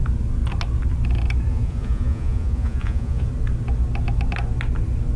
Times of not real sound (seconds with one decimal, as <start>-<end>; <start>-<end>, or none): 1.5-3.3